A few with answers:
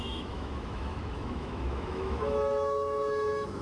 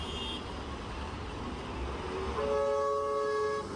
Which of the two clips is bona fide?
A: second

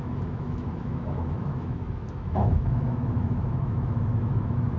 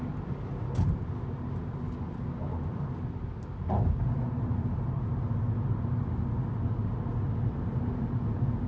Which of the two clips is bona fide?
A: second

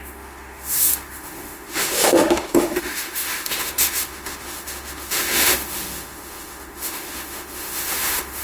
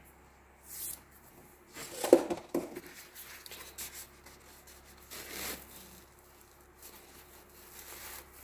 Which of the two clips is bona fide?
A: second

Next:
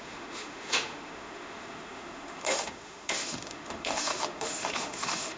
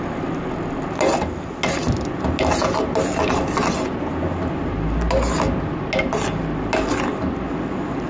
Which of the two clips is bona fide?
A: second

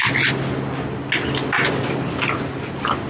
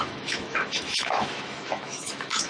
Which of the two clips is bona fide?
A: first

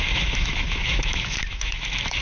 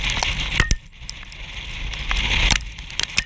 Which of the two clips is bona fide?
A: second